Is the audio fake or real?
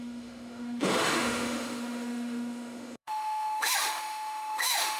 fake